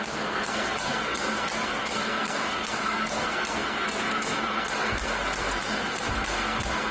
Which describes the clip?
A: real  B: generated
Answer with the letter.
B